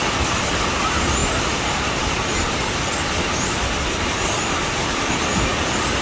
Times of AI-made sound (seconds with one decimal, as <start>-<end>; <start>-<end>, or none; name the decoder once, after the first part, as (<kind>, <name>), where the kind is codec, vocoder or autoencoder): none